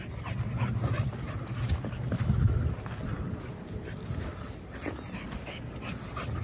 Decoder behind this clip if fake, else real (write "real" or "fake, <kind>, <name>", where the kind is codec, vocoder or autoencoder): real